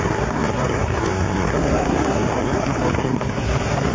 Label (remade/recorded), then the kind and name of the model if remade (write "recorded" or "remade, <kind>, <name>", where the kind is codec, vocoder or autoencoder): remade, codec, SNAC